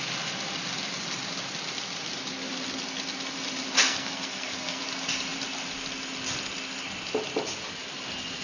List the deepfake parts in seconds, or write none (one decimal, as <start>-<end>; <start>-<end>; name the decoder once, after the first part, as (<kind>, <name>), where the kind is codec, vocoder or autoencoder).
3.8-4.8 (codec, SNAC)